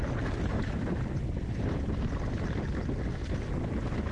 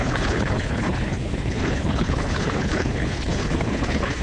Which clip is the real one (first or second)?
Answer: first